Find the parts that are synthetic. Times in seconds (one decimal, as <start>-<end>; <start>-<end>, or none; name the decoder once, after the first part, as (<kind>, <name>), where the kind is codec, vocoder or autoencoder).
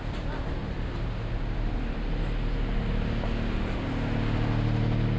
none